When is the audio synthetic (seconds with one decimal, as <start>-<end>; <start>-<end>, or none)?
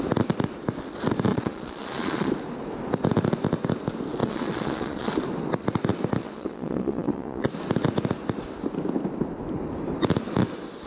1.3-2.3; 4.2-5.1; 6.2-7.5